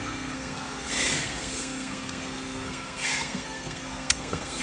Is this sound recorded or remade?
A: remade